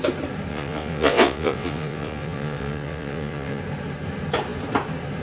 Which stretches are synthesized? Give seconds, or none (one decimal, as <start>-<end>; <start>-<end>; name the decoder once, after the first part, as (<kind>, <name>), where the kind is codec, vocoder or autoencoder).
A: 0.5-3.6 (vocoder, WaveNeXt)